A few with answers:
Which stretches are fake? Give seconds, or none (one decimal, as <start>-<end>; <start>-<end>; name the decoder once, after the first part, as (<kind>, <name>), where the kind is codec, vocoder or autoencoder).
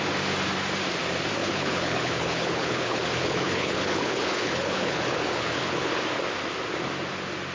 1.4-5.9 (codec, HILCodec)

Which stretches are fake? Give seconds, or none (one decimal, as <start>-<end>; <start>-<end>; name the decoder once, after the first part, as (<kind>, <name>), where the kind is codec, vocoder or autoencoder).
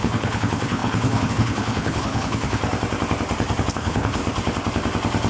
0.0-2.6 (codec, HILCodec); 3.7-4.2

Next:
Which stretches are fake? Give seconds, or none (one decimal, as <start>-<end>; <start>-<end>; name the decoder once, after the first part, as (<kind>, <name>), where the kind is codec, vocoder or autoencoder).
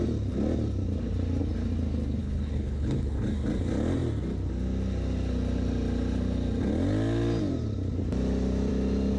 2.2-3.2 (codec, HILCodec)